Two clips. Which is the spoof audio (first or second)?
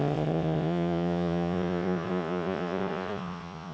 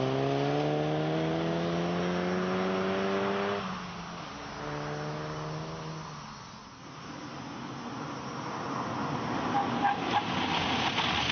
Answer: first